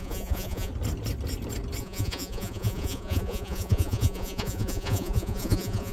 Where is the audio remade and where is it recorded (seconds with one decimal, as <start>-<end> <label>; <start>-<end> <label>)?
0.0-0.7 remade; 0.7-1.8 recorded; 1.8-5.9 remade